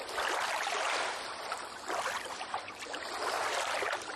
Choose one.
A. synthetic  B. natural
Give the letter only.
A